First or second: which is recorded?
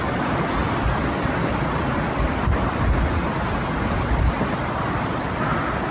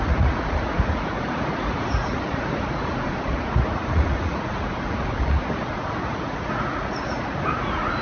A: first